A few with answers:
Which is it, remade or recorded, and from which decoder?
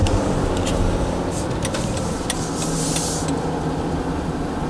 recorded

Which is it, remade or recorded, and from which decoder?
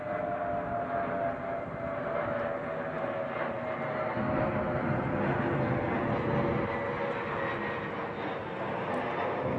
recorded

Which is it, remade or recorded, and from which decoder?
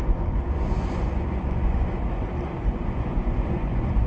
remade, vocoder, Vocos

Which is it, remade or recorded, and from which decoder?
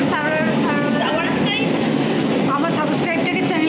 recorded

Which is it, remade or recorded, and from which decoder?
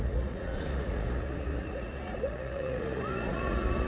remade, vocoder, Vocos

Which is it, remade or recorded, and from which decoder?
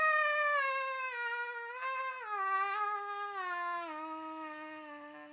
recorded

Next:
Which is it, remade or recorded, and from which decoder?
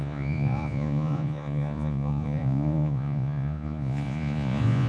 remade, vocoder, Vocos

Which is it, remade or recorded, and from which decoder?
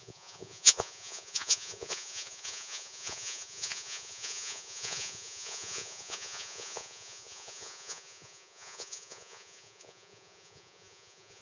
remade, vocoder, Vocos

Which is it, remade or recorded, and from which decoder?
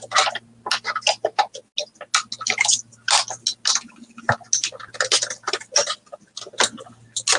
recorded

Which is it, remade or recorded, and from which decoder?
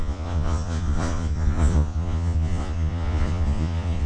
remade, vocoder, Vocos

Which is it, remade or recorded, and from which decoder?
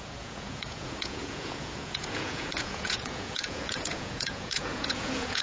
remade, vocoder, Vocos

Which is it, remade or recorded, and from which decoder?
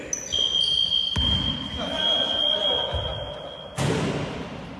recorded